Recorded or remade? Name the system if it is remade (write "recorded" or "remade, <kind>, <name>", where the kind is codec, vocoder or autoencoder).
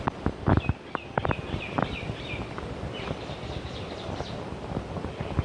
recorded